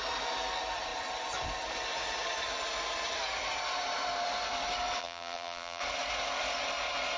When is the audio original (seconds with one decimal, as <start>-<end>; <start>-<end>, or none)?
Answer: 0.0-5.0; 5.8-7.2

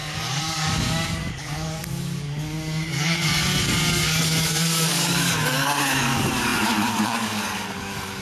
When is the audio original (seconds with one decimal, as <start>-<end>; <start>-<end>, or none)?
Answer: none

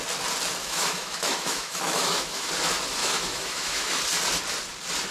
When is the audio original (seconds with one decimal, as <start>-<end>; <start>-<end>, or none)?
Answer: 0.0-0.6; 2.5-3.0; 4.0-5.1

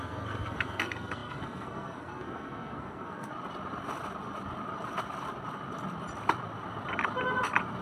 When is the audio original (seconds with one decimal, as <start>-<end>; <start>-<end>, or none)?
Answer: 3.3-7.8

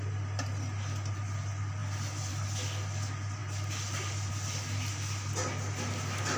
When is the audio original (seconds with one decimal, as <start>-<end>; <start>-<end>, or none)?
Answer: 0.0-6.4

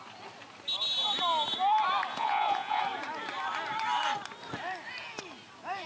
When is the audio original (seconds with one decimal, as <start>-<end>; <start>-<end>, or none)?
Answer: 0.0-2.1; 2.8-5.9

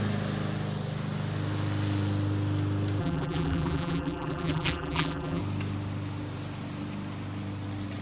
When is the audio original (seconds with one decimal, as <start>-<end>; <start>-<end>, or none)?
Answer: 0.0-3.0; 5.4-8.0